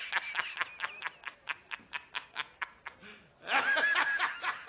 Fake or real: real